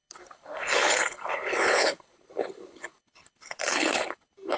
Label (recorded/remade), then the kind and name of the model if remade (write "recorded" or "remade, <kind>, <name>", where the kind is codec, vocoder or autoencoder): remade, codec, HILCodec